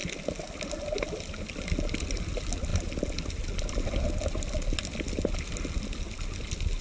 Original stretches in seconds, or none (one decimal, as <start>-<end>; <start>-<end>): 0.0-6.8